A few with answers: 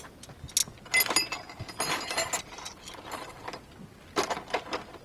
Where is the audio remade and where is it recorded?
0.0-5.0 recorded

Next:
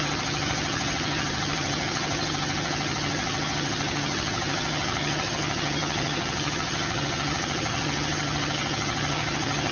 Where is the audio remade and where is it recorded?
0.0-9.7 remade

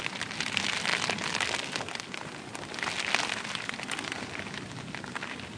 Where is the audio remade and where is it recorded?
0.0-5.6 recorded

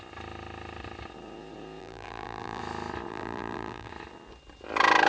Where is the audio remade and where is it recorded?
0.0-1.8 recorded; 1.8-2.6 remade; 2.6-3.1 recorded; 3.1-3.9 remade; 3.9-5.1 recorded